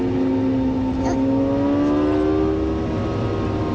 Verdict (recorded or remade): recorded